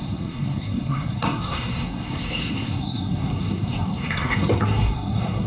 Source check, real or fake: fake